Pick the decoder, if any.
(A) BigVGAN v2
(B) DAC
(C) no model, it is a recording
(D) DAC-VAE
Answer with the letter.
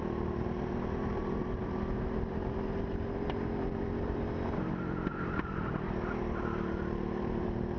A